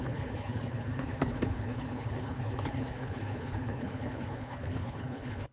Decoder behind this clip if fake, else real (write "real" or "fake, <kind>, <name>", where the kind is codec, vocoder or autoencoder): fake, codec, HILCodec